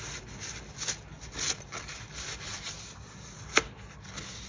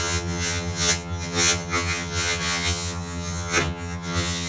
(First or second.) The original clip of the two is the first